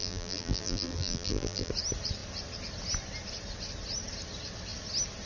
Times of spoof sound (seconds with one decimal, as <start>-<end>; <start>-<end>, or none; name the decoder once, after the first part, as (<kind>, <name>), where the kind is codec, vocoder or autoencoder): 0.0-1.7 (vocoder, BigVGAN v2)